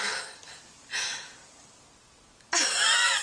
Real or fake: real